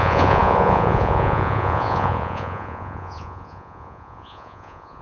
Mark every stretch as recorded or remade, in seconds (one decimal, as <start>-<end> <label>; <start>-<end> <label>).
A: 0.0-5.0 remade